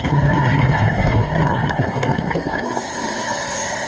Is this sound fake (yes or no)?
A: yes